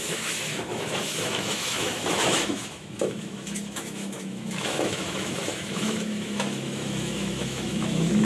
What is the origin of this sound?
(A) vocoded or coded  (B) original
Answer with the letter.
A